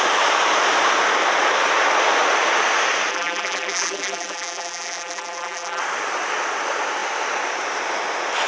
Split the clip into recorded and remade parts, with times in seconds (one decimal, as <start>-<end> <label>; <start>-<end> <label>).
0.0-3.1 recorded; 3.1-5.8 remade; 5.8-8.5 recorded